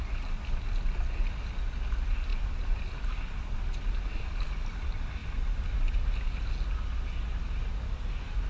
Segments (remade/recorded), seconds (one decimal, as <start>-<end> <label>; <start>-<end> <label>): 0.0-8.5 recorded